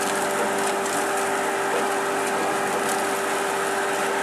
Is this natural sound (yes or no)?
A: yes